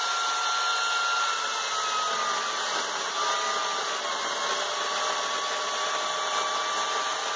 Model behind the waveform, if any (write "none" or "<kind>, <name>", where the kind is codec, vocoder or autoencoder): none